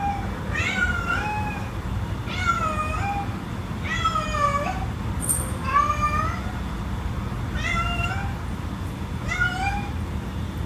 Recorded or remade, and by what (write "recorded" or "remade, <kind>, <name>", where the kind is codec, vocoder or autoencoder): recorded